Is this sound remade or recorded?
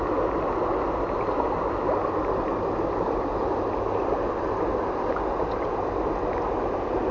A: recorded